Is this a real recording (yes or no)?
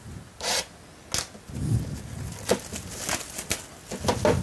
yes